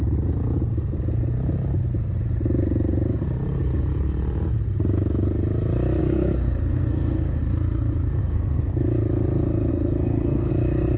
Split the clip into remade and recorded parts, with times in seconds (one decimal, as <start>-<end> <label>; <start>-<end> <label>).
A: 0.0-6.0 recorded; 6.0-7.4 remade; 7.4-8.2 recorded; 8.2-8.7 remade; 8.7-9.7 recorded; 9.7-10.5 remade; 10.5-11.0 recorded